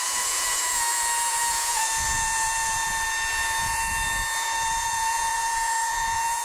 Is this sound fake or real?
fake